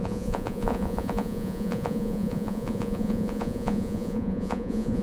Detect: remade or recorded remade